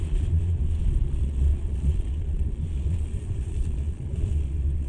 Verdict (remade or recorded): remade